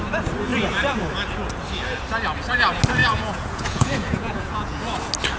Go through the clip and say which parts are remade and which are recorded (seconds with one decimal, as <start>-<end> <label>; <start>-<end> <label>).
0.0-3.0 recorded; 3.0-4.8 remade; 4.8-5.4 recorded